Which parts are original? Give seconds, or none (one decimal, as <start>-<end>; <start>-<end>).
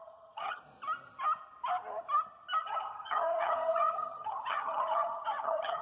0.6-2.6